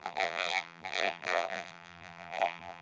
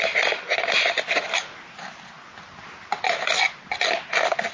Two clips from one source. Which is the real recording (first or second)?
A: second